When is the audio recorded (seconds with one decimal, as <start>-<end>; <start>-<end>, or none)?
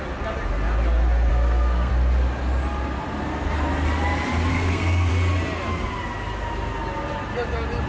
0.0-1.3; 1.9-4.5; 5.1-7.9